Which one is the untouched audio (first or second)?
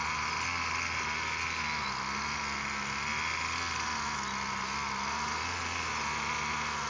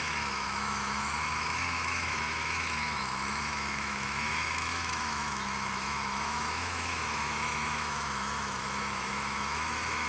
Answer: first